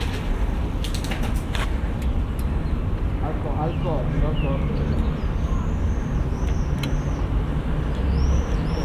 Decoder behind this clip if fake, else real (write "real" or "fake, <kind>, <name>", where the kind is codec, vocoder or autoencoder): real